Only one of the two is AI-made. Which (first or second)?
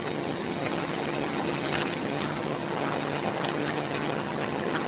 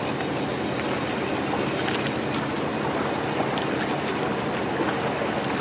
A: first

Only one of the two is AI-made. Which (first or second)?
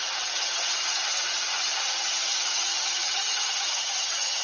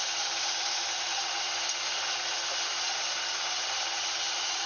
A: first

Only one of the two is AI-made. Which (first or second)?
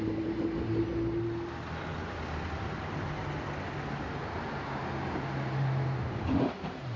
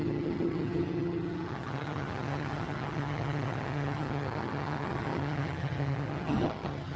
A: second